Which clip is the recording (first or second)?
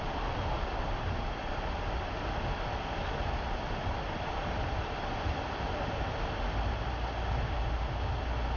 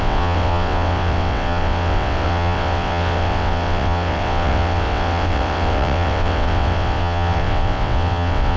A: first